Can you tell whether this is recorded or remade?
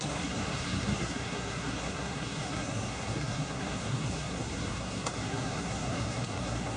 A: remade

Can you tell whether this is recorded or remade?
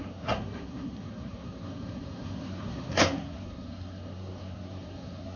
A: remade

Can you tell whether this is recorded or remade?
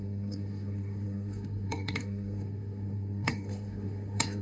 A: remade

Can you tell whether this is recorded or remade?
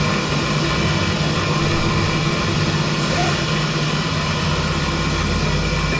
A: recorded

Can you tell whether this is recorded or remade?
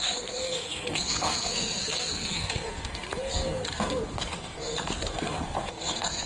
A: remade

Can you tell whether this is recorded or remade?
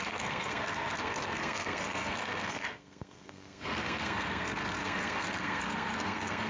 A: remade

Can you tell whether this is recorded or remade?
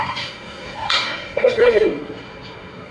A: remade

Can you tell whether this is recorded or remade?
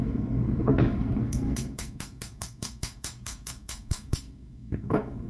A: remade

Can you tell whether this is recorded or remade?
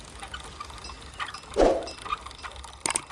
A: recorded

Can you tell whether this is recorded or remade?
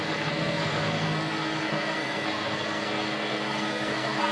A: remade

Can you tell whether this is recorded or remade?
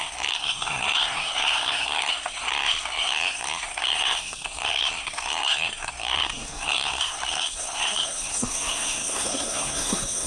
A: remade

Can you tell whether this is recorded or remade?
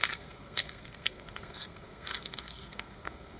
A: remade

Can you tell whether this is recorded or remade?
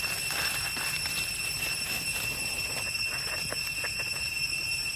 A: recorded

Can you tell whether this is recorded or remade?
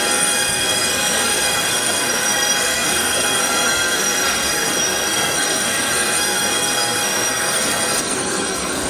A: remade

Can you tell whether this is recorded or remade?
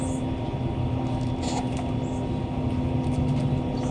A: recorded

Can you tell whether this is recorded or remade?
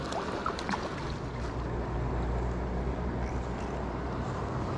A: recorded